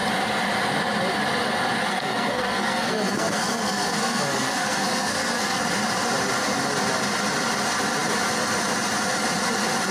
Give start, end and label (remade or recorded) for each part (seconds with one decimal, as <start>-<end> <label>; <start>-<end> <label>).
0.0-1.9 recorded; 1.9-5.6 remade; 5.6-9.9 recorded